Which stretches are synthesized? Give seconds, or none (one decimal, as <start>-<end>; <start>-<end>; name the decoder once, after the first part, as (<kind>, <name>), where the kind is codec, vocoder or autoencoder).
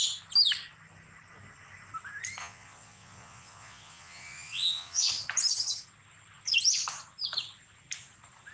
2.4-5.1 (vocoder, Vocos)